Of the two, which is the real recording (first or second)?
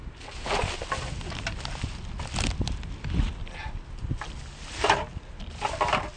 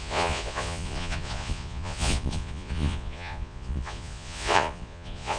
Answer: first